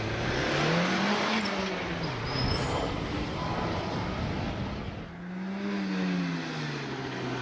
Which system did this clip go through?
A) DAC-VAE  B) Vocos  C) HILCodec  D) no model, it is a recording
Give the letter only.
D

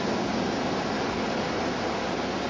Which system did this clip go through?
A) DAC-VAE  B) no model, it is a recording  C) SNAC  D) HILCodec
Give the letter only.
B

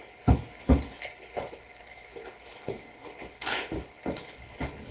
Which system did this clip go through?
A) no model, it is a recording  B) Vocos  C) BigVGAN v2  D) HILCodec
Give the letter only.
D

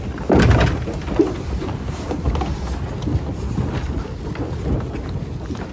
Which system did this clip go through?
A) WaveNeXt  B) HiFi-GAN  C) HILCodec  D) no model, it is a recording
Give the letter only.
D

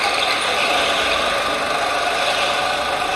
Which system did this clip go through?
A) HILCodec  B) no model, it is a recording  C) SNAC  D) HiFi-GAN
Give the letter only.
B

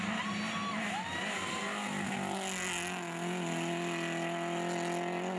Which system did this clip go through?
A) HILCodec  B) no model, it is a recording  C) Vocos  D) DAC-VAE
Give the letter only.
B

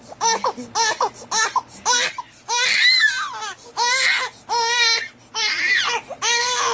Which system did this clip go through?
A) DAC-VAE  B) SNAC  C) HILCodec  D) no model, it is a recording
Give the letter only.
D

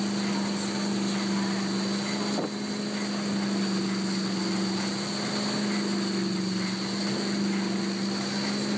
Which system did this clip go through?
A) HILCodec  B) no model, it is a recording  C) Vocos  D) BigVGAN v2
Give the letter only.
B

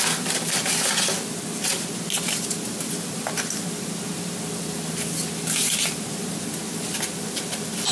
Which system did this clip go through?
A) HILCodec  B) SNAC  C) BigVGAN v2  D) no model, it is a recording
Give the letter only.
D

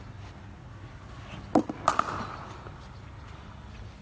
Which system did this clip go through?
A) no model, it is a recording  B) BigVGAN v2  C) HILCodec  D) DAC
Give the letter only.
A